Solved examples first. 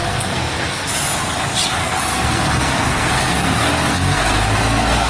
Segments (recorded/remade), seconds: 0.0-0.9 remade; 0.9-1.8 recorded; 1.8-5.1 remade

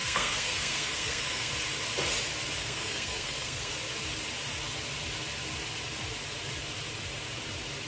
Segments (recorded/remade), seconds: 0.0-1.5 remade; 1.5-2.6 recorded; 2.6-3.7 remade; 3.7-7.9 recorded